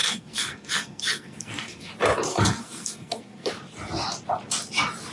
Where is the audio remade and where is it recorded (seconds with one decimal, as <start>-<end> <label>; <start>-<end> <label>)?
0.0-1.9 remade; 1.9-2.3 recorded; 2.3-3.5 remade; 3.5-5.1 recorded

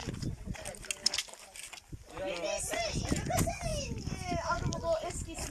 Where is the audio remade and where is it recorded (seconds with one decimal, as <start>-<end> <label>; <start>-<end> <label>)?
0.0-5.5 recorded

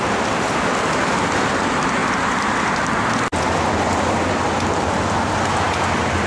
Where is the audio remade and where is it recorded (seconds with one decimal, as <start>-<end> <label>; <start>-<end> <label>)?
0.0-6.3 recorded